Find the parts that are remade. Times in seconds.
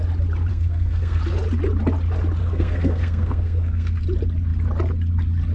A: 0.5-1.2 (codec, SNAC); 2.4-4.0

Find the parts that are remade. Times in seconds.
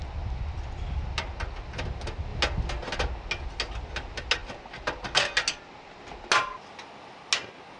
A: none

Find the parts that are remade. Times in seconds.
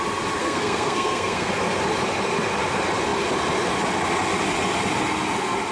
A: 0.4-1.5 (codec, SNAC)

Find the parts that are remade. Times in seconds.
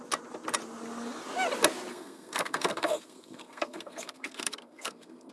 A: 1.9-5.3 (codec, SNAC)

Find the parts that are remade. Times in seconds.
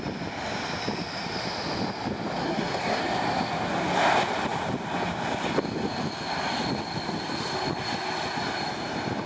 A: 2.4-3.0 (codec, SNAC)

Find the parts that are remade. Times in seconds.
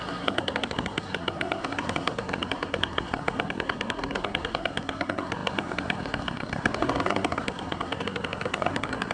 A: 0.0-9.1 (codec, SNAC)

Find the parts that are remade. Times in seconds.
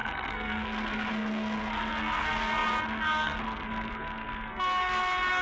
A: 0.0-5.4 (codec, SNAC)